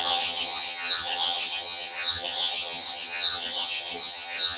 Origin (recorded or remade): remade